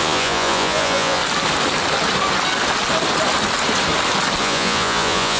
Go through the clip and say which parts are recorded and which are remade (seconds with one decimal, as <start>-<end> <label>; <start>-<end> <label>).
0.0-1.2 remade; 1.2-4.4 recorded; 4.4-5.4 remade